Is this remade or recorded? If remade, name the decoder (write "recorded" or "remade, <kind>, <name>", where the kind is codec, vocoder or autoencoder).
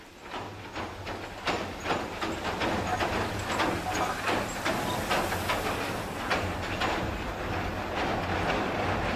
recorded